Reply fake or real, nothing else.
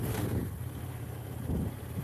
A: fake